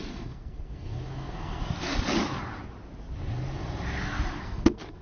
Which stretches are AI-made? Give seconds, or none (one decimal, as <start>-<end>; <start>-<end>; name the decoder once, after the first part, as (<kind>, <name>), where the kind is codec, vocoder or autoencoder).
0.0-1.6 (codec, SNAC); 4.4-5.0

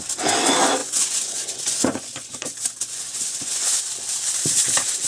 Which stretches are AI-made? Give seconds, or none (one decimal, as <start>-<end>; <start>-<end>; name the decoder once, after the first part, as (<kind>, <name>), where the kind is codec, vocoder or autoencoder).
0.8-3.9 (vocoder, Vocos)

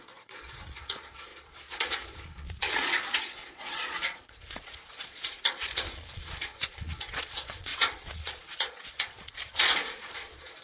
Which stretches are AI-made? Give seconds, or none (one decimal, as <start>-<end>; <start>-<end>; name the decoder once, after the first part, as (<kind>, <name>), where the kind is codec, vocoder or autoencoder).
0.0-10.6 (vocoder, Vocos)

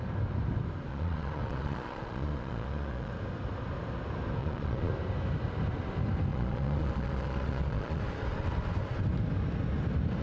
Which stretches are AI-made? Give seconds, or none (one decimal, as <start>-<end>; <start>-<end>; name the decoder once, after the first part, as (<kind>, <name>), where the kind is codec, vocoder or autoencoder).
0.9-3.1 (vocoder, Vocos); 4.4-4.9; 6.3-8.0

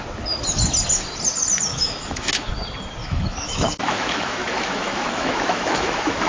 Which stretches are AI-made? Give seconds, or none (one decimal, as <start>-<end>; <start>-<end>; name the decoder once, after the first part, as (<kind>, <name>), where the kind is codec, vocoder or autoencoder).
1.7-2.5 (autoencoder, DAC-VAE); 3.0-6.3

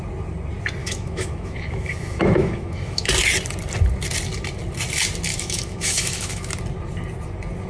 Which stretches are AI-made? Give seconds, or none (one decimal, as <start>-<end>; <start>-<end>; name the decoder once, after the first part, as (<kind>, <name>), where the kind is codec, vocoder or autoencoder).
0.8-3.1 (autoencoder, DAC-VAE); 5.3-6.5

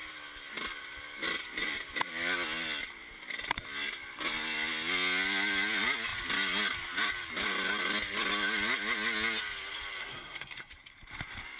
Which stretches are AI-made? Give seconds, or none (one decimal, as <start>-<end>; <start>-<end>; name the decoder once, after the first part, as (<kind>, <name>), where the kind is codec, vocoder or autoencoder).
10.0-10.7 (codec, SNAC)

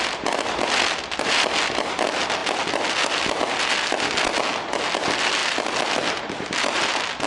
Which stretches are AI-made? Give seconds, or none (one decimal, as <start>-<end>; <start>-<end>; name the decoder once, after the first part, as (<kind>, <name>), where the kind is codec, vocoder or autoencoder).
none